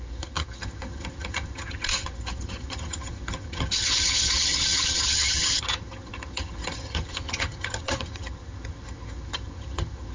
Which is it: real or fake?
fake